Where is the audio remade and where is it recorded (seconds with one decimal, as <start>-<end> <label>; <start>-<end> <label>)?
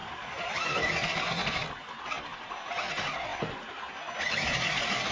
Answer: 0.0-5.1 recorded